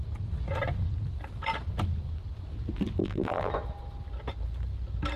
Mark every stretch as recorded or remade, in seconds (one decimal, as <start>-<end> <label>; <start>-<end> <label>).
0.0-3.0 recorded; 3.0-3.5 remade; 3.5-5.2 recorded

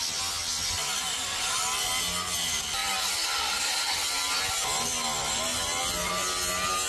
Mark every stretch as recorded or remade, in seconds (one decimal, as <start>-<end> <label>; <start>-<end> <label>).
0.0-2.8 recorded; 2.8-5.6 remade; 5.6-6.9 recorded

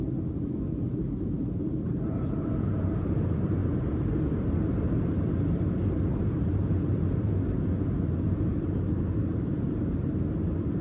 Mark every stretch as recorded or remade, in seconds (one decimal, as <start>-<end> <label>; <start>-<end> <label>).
0.0-10.8 remade

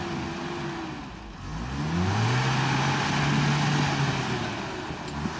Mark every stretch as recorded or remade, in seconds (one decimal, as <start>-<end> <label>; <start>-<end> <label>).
0.0-5.4 recorded